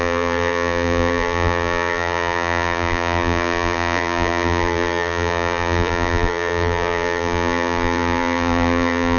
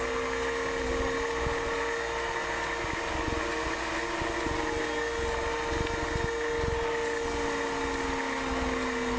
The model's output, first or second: first